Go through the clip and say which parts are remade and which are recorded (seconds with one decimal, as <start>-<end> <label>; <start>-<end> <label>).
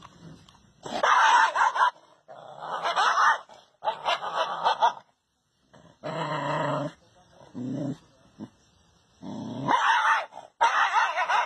0.0-11.5 recorded